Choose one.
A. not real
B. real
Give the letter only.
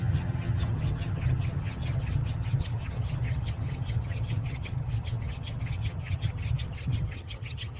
A